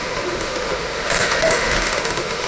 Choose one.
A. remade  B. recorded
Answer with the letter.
A